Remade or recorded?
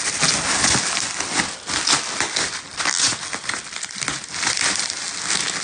recorded